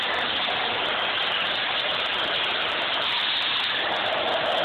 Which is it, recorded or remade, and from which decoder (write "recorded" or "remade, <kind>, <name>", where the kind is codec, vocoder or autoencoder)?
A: recorded